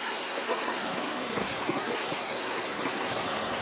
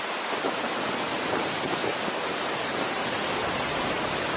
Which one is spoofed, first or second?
first